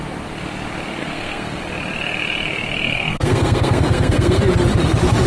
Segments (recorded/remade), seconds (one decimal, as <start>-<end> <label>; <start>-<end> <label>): 0.0-1.0 recorded; 1.0-1.6 remade; 1.6-2.9 recorded; 2.9-4.4 remade; 4.4-5.3 recorded

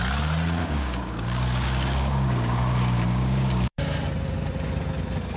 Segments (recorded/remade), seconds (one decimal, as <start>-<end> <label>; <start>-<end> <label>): 0.0-0.6 recorded; 0.6-3.8 remade; 3.8-5.4 recorded

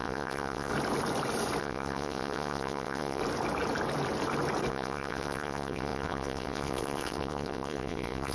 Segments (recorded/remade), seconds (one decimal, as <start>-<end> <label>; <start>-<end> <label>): 0.0-0.7 remade; 0.7-1.6 recorded; 1.6-3.2 remade; 3.2-4.7 recorded; 4.7-8.3 remade

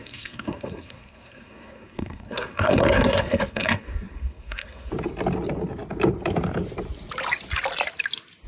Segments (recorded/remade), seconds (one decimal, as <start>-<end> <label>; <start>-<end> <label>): 0.0-4.9 remade; 4.9-8.5 recorded

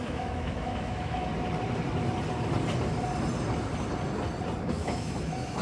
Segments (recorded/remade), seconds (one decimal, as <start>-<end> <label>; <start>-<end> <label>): 0.0-1.3 remade; 1.3-4.7 recorded; 4.7-5.6 remade

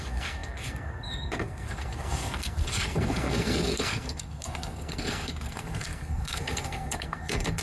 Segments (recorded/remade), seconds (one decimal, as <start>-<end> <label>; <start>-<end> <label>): 0.0-7.6 remade

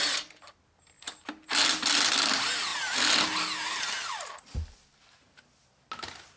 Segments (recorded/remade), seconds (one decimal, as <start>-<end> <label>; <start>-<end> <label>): 0.0-6.4 recorded

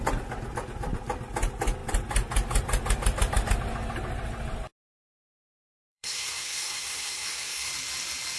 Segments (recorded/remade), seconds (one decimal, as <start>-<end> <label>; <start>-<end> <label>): 0.0-5.4 recorded; 5.4-7.7 remade; 7.7-8.4 recorded